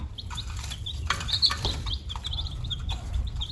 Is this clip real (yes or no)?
no